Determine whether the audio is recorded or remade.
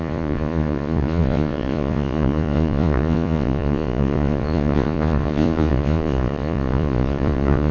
remade